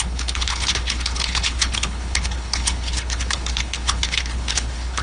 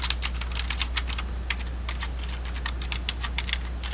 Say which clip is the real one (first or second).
second